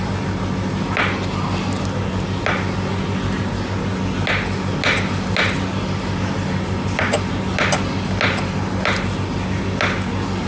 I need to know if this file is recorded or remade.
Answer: recorded